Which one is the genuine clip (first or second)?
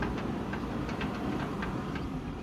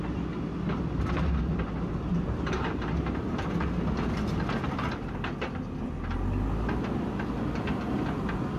second